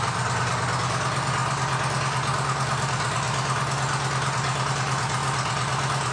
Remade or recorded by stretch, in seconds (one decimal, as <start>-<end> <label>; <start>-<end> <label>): 0.0-1.4 remade; 1.4-4.7 recorded; 4.7-6.1 remade